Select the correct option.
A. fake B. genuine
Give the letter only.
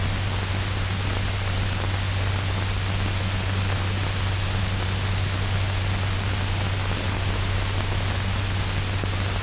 B